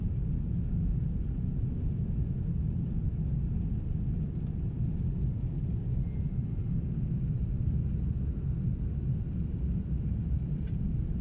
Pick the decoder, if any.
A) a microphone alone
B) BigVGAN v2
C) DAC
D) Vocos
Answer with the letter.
A